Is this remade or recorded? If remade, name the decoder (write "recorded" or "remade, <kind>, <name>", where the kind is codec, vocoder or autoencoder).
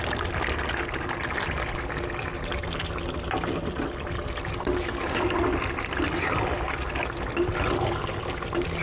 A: recorded